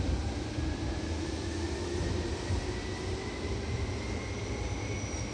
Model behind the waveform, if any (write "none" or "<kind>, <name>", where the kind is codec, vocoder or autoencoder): none